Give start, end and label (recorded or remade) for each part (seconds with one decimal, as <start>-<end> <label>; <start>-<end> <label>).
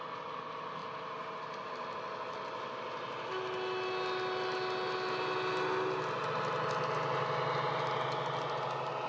0.0-9.1 recorded